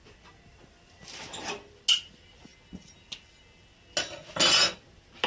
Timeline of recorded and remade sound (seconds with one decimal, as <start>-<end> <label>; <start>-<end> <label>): 0.0-5.3 recorded